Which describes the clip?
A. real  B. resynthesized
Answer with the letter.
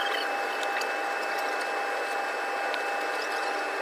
A